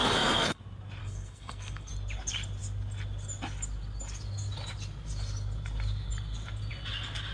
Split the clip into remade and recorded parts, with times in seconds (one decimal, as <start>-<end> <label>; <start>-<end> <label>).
0.0-0.6 remade; 0.6-1.0 recorded; 1.0-1.9 remade; 1.9-7.3 recorded